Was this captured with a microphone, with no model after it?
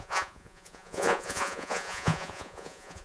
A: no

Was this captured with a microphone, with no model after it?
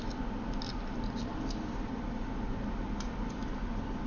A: yes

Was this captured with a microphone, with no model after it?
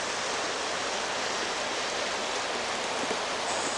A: yes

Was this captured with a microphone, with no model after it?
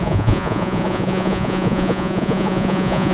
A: no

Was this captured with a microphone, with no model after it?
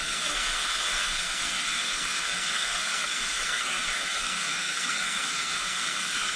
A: no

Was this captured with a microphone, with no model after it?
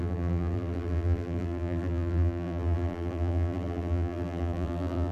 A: no